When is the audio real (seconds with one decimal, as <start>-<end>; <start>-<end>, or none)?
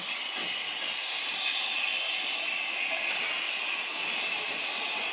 0.0-5.1